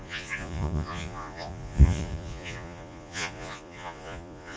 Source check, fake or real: fake